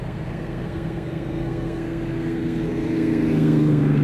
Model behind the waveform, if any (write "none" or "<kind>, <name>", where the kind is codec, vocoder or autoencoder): codec, SNAC